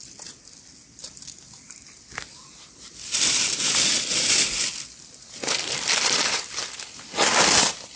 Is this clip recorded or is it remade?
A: recorded